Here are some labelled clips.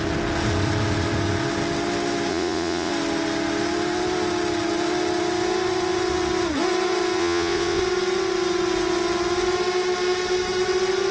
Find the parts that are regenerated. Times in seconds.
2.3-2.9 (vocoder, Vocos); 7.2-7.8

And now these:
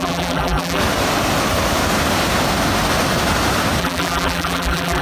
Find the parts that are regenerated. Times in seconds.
0.0-0.8 (vocoder, BigVGAN v2); 3.8-5.0

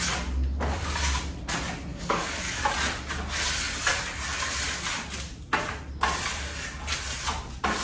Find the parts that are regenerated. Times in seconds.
1.9-2.6 (codec, DAC)

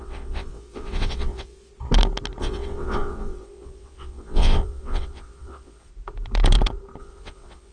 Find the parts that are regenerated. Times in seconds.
0.0-1.7 (vocoder, WaveNeXt); 2.4-5.9; 7.0-7.7

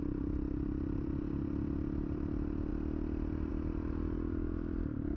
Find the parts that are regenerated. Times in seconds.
0.0-2.7 (vocoder, BigVGAN v2); 3.5-5.2